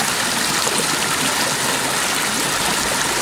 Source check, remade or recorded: recorded